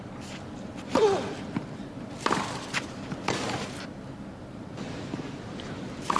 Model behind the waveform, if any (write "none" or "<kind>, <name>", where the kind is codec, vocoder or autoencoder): vocoder, BigVGAN v2